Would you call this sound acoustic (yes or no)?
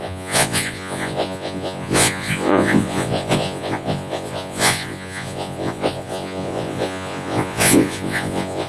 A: no